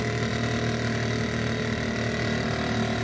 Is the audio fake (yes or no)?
no